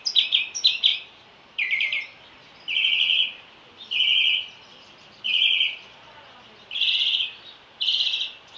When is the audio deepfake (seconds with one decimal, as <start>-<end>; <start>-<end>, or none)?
0.9-2.2